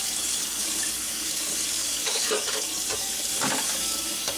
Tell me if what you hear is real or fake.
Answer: fake